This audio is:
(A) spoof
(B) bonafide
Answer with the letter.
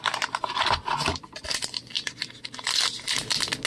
B